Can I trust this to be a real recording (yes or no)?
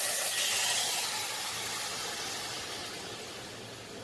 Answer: yes